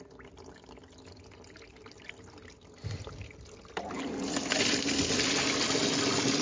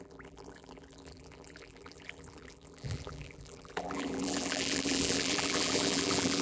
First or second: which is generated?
second